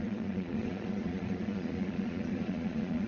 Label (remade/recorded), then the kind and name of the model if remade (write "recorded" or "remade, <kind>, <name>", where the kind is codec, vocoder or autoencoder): remade, vocoder, Vocos